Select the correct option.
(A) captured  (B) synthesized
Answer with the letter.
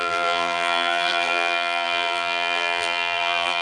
B